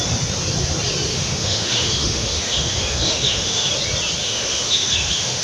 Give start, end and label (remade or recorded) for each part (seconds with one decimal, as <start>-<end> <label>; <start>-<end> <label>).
0.0-1.1 recorded; 1.1-3.7 remade; 3.7-4.2 recorded; 4.2-5.4 remade

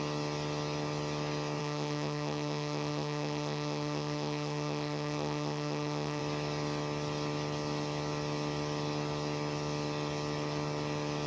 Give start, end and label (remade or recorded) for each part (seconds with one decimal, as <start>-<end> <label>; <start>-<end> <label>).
0.0-1.6 recorded; 1.6-6.2 remade; 6.2-11.3 recorded

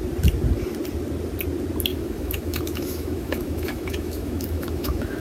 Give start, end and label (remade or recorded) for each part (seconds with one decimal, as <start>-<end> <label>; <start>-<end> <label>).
0.0-1.9 recorded; 1.9-5.2 remade